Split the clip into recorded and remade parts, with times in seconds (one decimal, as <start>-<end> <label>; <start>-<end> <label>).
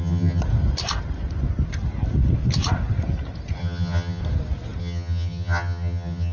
0.0-0.4 remade; 0.4-3.6 recorded; 3.6-4.2 remade; 4.2-4.8 recorded; 4.8-6.3 remade